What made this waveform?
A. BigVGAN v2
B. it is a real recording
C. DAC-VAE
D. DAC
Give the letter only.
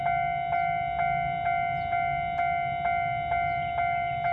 B